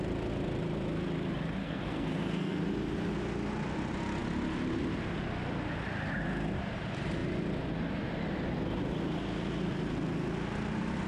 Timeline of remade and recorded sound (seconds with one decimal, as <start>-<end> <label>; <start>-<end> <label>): 0.0-1.6 recorded; 1.6-2.6 remade; 2.6-11.1 recorded